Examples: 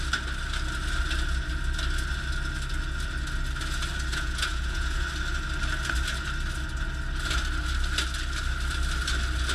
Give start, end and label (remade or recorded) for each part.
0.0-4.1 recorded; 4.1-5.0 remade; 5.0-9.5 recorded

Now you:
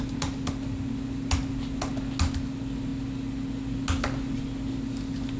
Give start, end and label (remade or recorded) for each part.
0.0-5.4 recorded